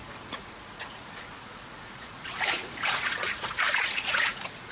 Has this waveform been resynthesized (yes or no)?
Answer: yes